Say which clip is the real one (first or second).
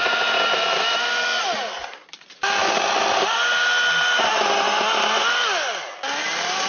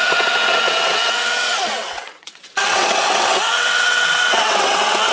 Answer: first